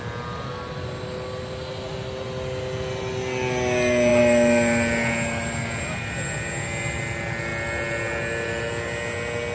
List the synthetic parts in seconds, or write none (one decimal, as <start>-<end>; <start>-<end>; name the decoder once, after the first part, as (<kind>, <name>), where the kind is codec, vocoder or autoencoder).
4.1-6.5 (vocoder, BigVGAN v2)